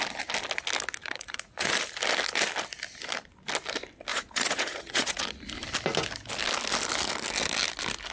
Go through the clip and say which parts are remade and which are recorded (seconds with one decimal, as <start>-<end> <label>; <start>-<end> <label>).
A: 0.0-1.0 recorded; 1.0-1.7 remade; 1.7-4.1 recorded; 4.1-5.2 remade; 5.2-8.1 recorded